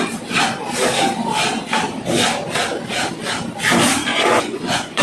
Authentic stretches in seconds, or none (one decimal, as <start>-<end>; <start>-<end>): 0.0-4.1